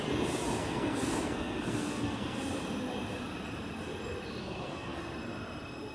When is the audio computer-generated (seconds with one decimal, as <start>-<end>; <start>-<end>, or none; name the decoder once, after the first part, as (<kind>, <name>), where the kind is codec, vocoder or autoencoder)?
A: 0.6-2.4 (codec, SNAC); 4.4-5.0